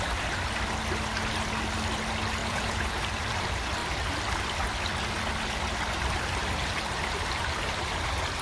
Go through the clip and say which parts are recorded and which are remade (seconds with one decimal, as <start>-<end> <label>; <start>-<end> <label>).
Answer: 0.0-2.4 recorded; 2.4-3.0 remade; 3.0-8.4 recorded